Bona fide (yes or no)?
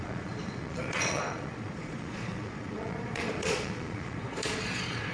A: no